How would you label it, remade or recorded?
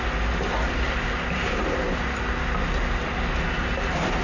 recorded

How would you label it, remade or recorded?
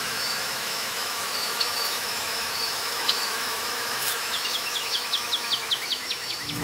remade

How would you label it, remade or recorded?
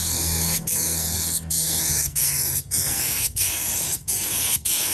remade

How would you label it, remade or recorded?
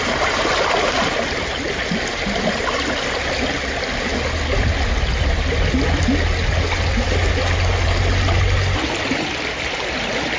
recorded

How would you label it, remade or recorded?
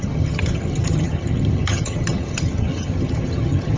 remade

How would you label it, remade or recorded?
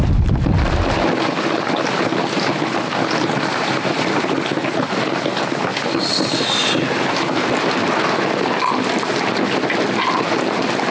recorded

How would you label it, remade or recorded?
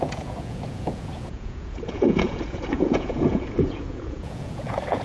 remade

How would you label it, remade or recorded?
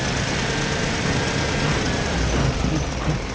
recorded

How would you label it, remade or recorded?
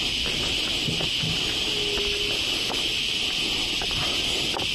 recorded